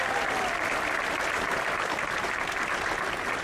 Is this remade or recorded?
recorded